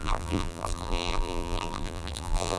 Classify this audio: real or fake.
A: fake